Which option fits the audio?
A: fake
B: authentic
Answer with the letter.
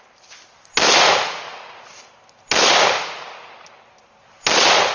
B